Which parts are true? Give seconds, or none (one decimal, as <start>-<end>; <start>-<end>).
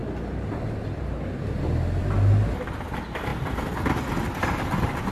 0.0-5.1